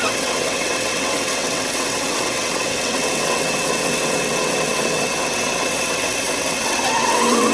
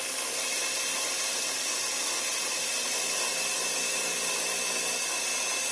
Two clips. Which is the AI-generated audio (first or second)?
first